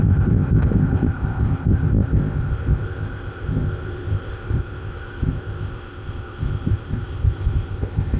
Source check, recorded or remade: remade